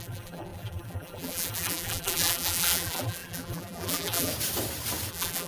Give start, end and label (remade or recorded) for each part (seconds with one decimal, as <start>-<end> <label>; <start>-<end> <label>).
0.0-4.3 remade; 4.3-5.1 recorded; 5.1-5.5 remade